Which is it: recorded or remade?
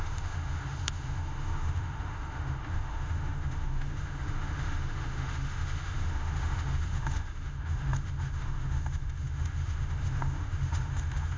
remade